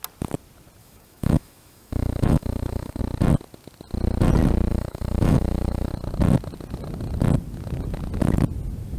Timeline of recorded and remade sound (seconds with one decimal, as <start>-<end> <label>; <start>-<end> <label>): 0.0-0.8 recorded; 0.8-3.0 remade; 3.0-4.7 recorded; 4.7-5.9 remade; 5.9-9.0 recorded